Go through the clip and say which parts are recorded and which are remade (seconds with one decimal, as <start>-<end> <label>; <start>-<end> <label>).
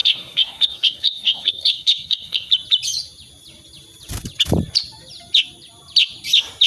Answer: 0.0-2.5 remade; 2.5-6.7 recorded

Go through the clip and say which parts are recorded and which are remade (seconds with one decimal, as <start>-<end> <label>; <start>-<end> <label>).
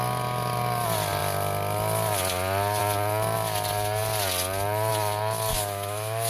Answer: 0.0-5.5 recorded; 5.5-6.3 remade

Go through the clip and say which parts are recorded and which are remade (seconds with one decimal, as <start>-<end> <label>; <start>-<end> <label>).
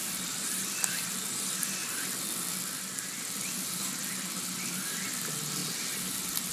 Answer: 0.0-0.7 remade; 0.7-1.8 recorded; 1.8-2.5 remade; 2.5-6.5 recorded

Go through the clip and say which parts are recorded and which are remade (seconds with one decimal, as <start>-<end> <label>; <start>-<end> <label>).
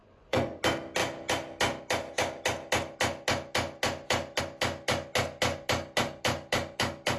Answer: 0.0-0.6 remade; 0.6-7.2 recorded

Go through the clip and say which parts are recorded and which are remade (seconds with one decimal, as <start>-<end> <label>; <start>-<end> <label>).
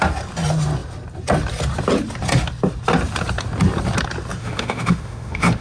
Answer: 0.0-4.4 recorded; 4.4-5.6 remade